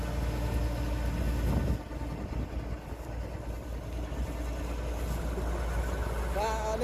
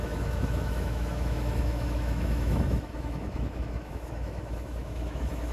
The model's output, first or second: second